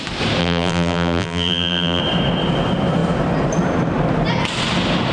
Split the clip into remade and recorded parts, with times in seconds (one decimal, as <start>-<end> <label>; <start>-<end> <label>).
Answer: 0.0-0.4 recorded; 0.4-2.0 remade; 2.0-5.1 recorded